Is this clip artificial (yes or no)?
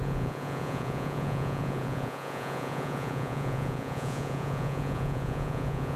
yes